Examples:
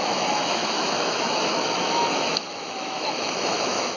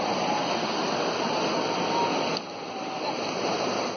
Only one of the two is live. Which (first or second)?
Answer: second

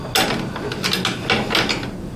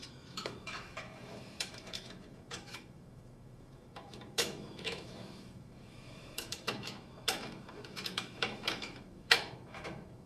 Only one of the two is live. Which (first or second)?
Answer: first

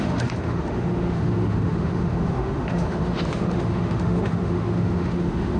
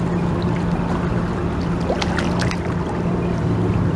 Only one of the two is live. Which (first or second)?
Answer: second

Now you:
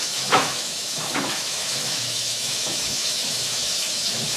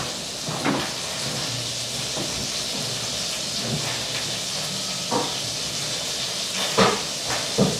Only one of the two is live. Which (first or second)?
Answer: second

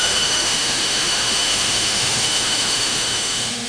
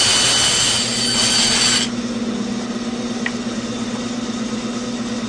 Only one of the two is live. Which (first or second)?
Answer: second